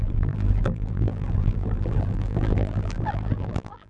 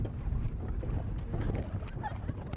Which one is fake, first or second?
first